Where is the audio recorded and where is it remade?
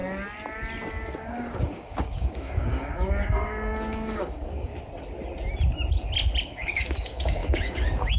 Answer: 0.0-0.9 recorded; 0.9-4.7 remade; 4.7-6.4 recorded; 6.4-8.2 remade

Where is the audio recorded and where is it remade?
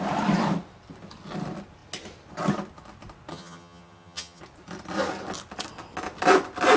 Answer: 0.0-3.3 recorded; 3.3-4.4 remade; 4.4-6.8 recorded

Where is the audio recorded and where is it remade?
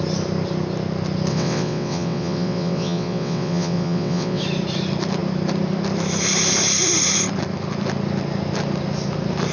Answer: 0.0-1.3 recorded; 1.3-4.4 remade; 4.4-9.5 recorded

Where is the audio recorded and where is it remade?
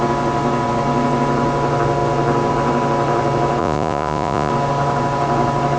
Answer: 0.0-3.6 recorded; 3.6-4.5 remade; 4.5-5.8 recorded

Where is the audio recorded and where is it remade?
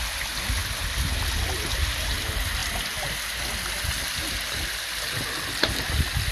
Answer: 0.0-6.3 recorded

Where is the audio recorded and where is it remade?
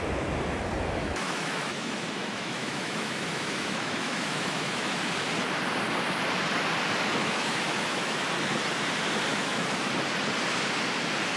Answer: 0.0-1.0 recorded; 1.0-5.0 remade; 5.0-7.2 recorded; 7.2-8.3 remade; 8.3-9.3 recorded; 9.3-9.9 remade; 9.9-11.4 recorded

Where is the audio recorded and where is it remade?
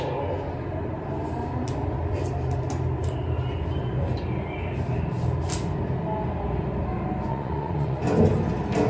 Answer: 0.0-7.3 recorded; 7.3-8.0 remade; 8.0-8.9 recorded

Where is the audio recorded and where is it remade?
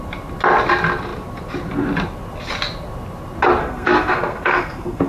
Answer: 0.0-3.6 recorded; 3.6-5.1 remade